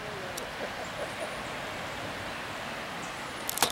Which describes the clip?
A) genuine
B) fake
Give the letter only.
A